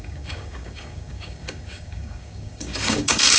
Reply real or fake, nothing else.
fake